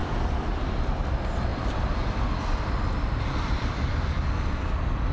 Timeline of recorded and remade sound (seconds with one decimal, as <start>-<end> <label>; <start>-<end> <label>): 0.0-0.7 remade; 0.7-1.5 recorded; 1.5-4.6 remade; 4.6-5.1 recorded